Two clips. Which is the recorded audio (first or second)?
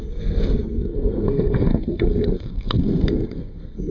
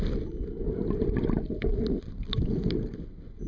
second